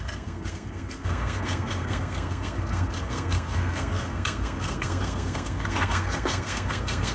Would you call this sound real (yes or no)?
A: no